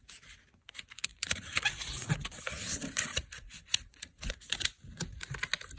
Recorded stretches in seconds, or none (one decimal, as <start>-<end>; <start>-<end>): 0.0-1.1; 2.1-3.1; 5.3-5.8